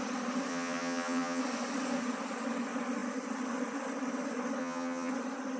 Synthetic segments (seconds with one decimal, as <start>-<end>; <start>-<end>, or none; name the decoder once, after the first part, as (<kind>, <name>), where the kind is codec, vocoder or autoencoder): 0.5-1.4 (vocoder, HiFi-GAN); 4.6-5.1